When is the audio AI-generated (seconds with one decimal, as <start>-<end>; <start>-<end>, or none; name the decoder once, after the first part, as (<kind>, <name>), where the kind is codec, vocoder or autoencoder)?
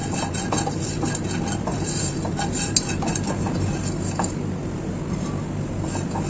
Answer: none